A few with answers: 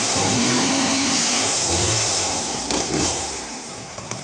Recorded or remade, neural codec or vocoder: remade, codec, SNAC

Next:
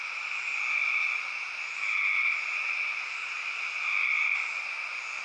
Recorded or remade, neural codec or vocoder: recorded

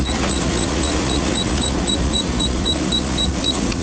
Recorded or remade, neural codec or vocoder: remade, vocoder, Vocos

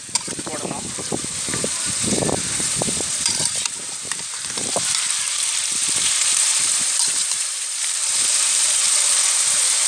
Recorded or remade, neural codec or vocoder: remade, vocoder, BigVGAN v2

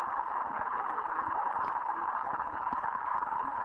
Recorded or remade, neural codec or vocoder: remade, codec, HILCodec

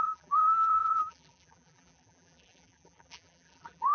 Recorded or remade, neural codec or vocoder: remade, vocoder, BigVGAN v2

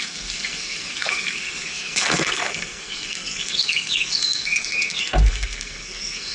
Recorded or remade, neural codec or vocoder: remade, codec, SNAC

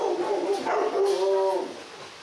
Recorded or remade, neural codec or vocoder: recorded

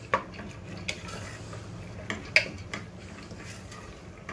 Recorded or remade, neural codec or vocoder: recorded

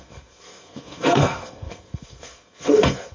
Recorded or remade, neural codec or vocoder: remade, codec, SNAC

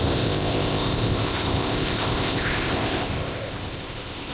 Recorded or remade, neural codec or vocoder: remade, codec, ZipCodec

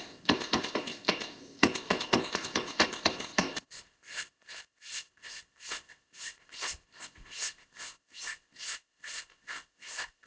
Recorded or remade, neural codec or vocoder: remade, codec, ZipCodec